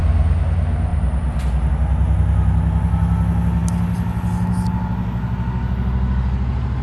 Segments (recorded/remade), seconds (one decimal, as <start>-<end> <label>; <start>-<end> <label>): 0.0-0.9 recorded; 0.9-1.7 remade; 1.7-6.8 recorded